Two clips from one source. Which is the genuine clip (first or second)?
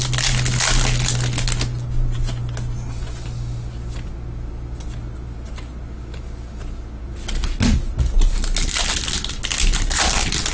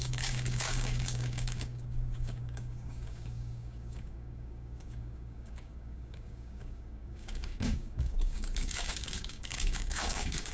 first